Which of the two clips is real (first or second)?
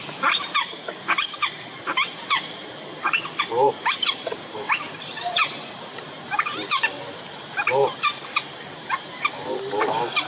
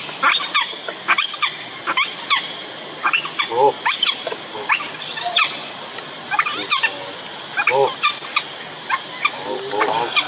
second